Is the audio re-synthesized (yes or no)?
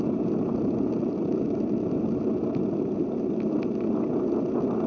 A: no